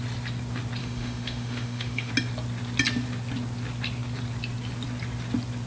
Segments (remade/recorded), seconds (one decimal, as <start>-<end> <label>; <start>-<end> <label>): 0.0-0.8 recorded; 0.8-2.1 remade; 2.1-5.7 recorded